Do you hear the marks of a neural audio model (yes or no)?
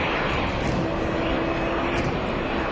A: no